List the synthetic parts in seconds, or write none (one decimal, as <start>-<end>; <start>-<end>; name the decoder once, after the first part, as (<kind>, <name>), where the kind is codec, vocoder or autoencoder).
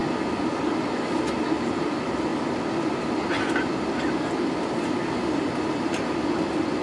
none